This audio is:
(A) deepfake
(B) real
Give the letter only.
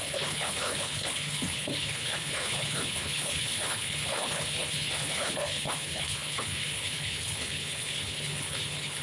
A